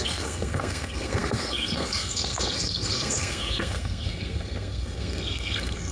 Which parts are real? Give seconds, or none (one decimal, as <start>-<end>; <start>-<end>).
none